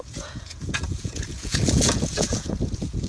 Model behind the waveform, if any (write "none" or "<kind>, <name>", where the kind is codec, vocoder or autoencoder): vocoder, Vocos